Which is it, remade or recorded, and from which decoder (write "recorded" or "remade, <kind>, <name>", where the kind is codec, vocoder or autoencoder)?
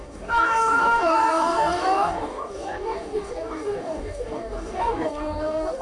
remade, codec, DAC